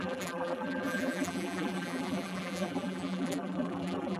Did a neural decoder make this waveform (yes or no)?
yes